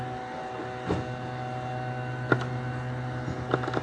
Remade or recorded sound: recorded